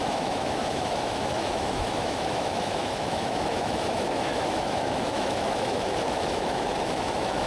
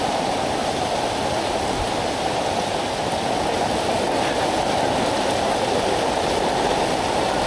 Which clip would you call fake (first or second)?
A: first